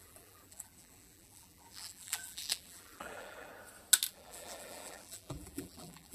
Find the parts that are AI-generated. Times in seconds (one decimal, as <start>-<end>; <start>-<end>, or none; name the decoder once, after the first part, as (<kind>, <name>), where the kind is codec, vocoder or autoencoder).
0.0-3.5 (vocoder, BigVGAN v2); 4.1-6.1